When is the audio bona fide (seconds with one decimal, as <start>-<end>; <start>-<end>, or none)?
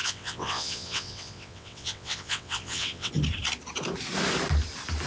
3.1-5.1